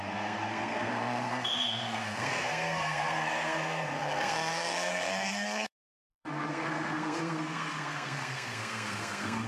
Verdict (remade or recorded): remade